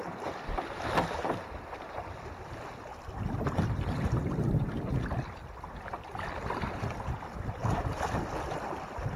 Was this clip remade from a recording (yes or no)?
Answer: no